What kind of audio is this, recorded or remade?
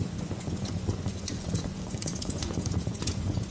remade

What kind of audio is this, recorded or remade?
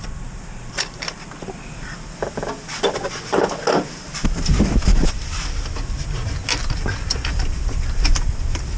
recorded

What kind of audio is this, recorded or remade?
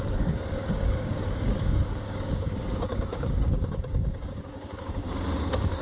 remade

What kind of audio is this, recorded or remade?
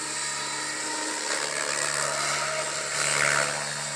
recorded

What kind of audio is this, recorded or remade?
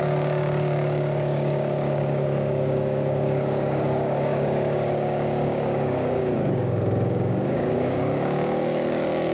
remade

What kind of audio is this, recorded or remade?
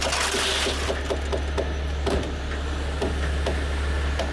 recorded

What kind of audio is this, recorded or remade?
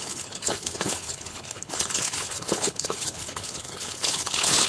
remade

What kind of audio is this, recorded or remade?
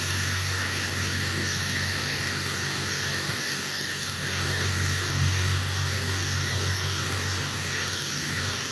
remade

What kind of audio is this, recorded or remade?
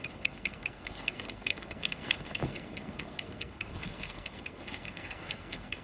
remade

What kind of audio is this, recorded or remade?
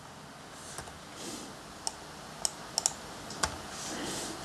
recorded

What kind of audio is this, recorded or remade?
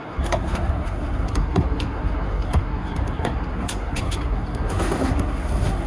remade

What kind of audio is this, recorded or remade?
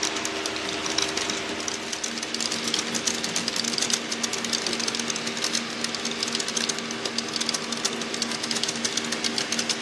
recorded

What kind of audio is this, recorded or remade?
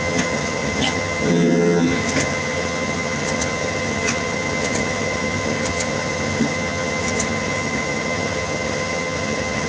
remade